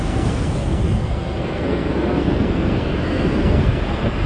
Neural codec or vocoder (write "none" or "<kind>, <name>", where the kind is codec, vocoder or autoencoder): codec, SNAC